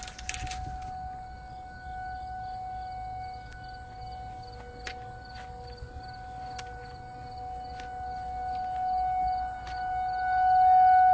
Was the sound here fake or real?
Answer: real